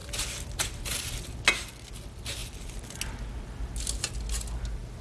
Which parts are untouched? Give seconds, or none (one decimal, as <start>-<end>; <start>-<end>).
0.0-5.0